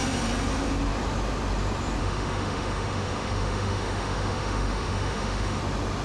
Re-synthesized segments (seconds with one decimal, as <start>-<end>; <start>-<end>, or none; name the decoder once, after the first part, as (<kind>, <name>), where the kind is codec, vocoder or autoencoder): 2.0-5.6 (autoencoder, DAC-VAE)